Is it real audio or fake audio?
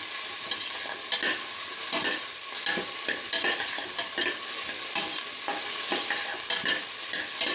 fake